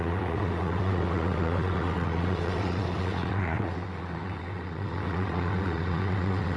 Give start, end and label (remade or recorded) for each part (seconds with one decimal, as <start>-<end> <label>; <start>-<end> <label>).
0.0-6.6 remade